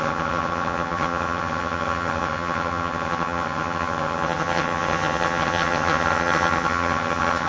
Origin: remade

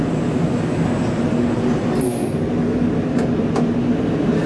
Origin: recorded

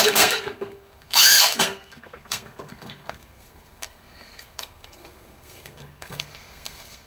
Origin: remade